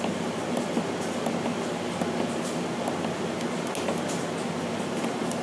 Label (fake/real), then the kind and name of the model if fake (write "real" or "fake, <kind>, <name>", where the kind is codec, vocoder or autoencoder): real